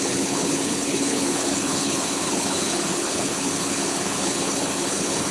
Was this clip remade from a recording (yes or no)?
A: yes